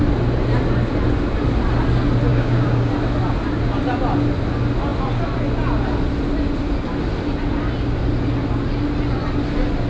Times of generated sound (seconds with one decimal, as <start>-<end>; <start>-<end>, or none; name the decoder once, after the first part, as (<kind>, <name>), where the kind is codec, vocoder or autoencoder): 2.3-2.9 (codec, DAC)